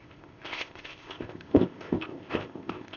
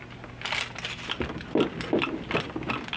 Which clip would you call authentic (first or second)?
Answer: second